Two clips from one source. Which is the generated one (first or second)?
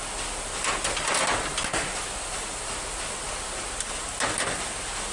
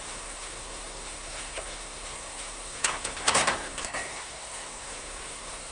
second